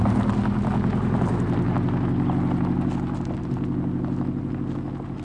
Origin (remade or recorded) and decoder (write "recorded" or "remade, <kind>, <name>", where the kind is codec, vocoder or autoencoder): recorded